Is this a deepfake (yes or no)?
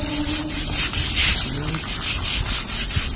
no